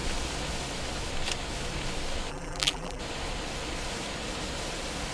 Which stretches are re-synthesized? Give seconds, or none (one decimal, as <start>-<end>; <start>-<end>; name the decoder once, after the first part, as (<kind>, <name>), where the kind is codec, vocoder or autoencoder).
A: 2.3-3.0 (vocoder, BigVGAN v2)

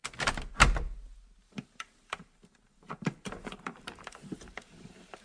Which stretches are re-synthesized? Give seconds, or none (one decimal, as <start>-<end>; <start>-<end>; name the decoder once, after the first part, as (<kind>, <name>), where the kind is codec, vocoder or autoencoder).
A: 1.5-5.2 (vocoder, BigVGAN v2)

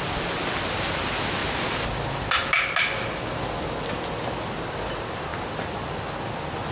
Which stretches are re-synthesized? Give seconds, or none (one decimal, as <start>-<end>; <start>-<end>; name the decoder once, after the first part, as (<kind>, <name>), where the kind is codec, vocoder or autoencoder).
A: none